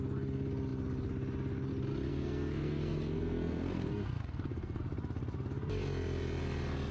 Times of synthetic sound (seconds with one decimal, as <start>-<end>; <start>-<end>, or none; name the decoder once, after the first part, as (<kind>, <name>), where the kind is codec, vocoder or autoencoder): 2.1-4.8 (codec, SNAC)